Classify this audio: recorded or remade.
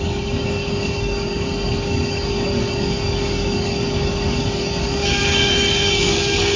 remade